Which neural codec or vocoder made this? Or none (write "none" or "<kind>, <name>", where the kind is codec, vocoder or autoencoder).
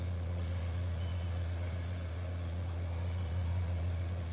vocoder, Vocos